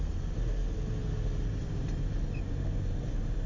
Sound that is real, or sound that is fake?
real